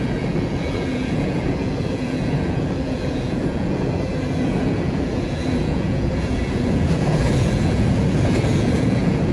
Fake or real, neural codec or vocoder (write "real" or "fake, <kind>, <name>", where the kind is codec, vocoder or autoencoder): fake, vocoder, Vocos